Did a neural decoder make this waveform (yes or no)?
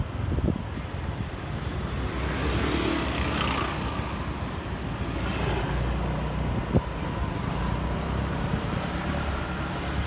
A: no